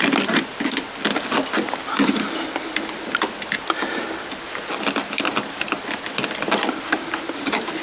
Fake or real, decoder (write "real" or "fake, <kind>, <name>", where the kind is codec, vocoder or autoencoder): real